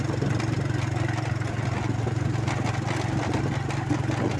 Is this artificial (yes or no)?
no